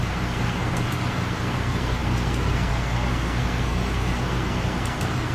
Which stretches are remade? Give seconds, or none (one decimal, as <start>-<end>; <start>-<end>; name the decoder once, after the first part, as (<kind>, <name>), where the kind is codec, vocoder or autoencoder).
0.0-5.3 (codec, SNAC)